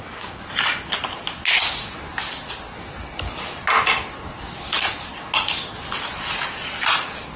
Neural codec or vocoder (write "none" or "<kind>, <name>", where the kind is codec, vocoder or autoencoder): none